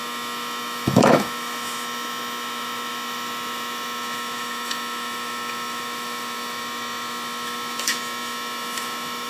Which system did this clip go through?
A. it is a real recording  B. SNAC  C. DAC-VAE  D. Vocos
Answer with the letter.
C